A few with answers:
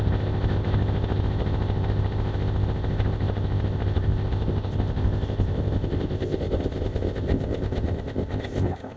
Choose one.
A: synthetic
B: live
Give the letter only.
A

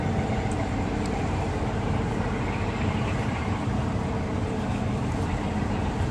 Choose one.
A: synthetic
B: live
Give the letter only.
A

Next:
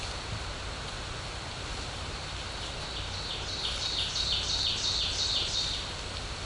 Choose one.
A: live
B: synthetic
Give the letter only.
A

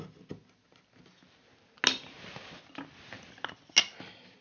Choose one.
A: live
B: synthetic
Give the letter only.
A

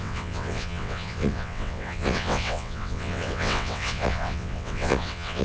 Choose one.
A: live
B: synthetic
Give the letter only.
B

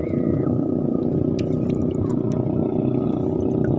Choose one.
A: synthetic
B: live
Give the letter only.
B